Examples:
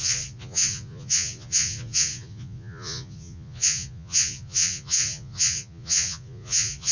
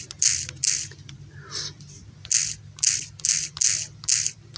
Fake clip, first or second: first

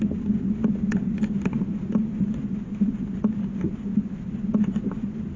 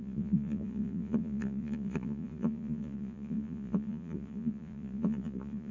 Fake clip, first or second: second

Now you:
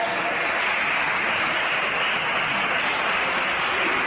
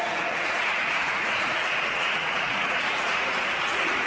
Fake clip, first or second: second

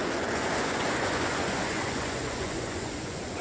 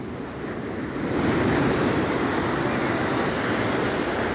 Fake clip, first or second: first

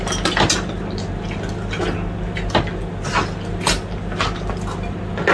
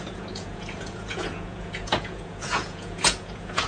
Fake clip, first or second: second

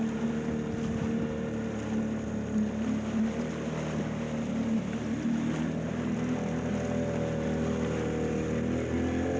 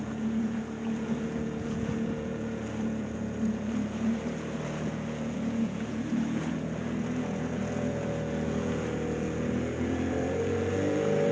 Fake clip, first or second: second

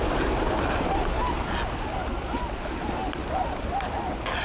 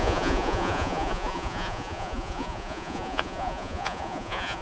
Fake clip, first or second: second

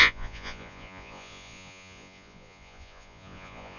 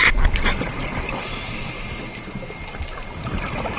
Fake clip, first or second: first